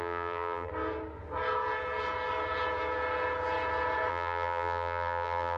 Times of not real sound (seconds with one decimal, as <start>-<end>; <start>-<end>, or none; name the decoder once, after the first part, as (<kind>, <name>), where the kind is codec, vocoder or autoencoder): 0.0-0.7 (vocoder, BigVGAN v2); 4.1-5.6